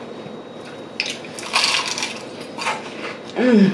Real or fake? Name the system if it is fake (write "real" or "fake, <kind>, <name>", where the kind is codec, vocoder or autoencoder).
real